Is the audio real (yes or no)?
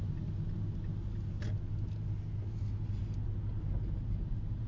yes